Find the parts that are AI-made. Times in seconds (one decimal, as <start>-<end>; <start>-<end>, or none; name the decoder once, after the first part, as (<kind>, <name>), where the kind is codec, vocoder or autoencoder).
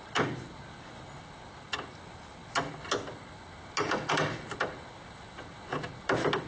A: none